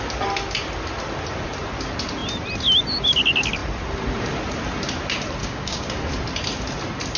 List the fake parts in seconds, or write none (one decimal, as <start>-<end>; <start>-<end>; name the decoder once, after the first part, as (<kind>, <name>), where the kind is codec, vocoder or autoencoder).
5.4-6.0 (codec, DAC)